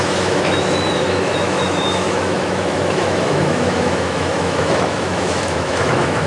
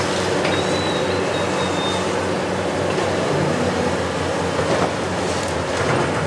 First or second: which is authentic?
second